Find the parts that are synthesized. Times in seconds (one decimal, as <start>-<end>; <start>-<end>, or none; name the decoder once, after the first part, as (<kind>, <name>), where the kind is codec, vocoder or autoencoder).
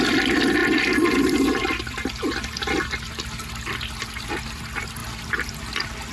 none